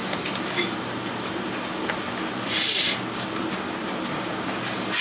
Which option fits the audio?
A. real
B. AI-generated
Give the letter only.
A